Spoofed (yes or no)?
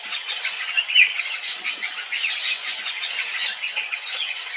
yes